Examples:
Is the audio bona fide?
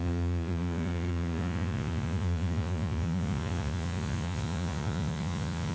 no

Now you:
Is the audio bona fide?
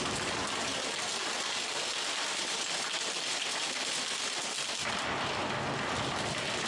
yes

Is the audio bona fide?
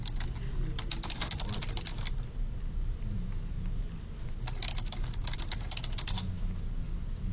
yes